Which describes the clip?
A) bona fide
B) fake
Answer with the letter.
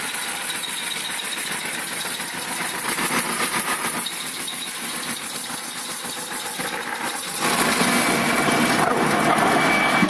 A